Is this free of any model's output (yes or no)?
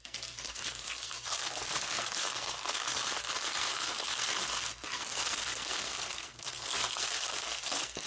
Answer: no